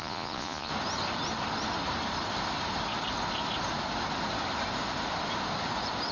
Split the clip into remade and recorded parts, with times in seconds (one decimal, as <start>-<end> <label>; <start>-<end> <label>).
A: 0.0-0.7 remade; 0.7-6.1 recorded